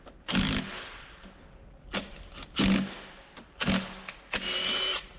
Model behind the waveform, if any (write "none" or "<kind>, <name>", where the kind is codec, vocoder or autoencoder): none